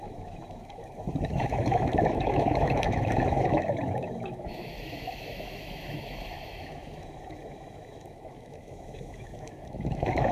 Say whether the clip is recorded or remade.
remade